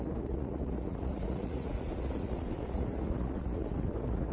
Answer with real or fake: fake